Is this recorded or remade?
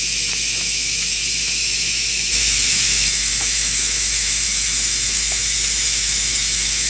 remade